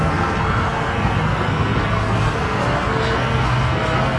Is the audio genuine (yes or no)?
no